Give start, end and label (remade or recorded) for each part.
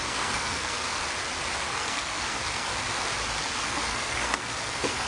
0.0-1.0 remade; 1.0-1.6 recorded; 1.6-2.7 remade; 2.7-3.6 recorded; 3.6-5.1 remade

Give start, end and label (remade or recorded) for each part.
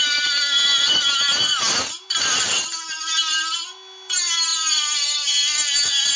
0.0-6.2 recorded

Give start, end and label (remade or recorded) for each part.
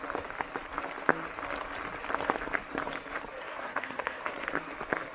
0.0-3.5 recorded; 3.5-4.2 remade; 4.2-5.1 recorded